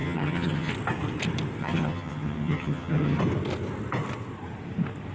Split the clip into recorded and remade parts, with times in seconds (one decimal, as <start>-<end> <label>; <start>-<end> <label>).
0.0-0.7 remade; 0.7-1.6 recorded; 1.6-3.2 remade; 3.2-5.1 recorded